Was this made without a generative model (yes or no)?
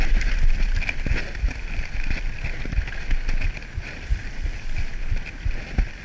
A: yes